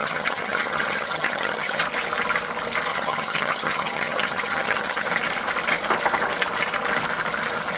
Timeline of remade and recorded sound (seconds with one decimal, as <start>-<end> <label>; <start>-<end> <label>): 0.0-1.8 remade; 1.8-2.9 recorded; 2.9-5.1 remade; 5.1-7.8 recorded